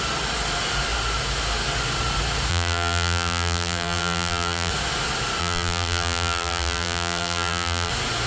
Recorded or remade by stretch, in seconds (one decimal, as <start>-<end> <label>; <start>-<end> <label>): 0.0-2.5 recorded; 2.5-4.7 remade; 4.7-5.4 recorded; 5.4-7.9 remade; 7.9-8.3 recorded